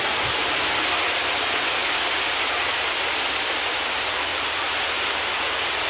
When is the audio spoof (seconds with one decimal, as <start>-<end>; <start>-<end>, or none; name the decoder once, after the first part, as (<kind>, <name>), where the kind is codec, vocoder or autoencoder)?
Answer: none